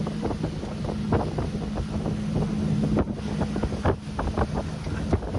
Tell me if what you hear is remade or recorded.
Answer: recorded